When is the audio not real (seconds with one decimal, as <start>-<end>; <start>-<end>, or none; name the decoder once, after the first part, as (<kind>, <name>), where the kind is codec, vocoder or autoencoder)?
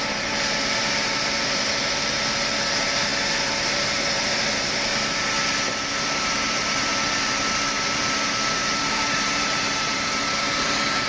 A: 0.0-4.9 (vocoder, BigVGAN v2); 5.9-11.1